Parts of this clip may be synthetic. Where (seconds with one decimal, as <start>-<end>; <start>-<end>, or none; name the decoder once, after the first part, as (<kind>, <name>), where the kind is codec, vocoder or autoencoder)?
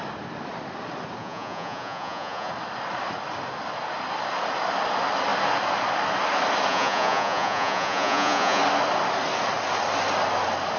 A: 1.2-2.5 (vocoder, Vocos); 6.7-8.6